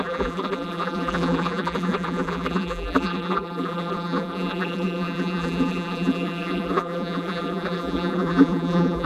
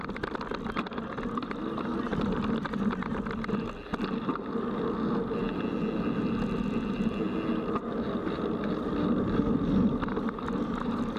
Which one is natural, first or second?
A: second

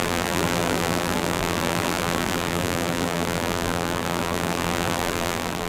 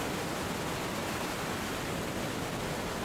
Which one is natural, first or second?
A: second